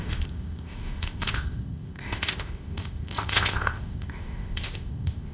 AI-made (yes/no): yes